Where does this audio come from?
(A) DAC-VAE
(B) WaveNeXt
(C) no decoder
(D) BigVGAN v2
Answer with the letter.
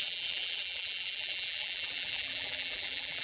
D